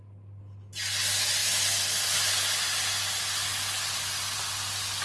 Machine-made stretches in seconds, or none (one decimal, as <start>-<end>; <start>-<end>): none